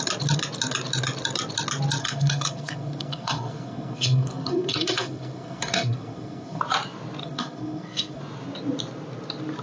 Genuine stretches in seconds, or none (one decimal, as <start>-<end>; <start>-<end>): 0.0-2.0; 6.6-7.2; 8.2-9.6

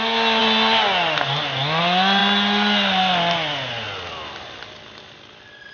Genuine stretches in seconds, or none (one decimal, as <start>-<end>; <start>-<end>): 0.0-5.7